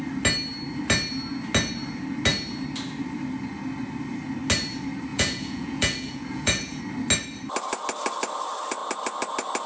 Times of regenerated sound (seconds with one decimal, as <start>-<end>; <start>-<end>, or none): 5.1-6.8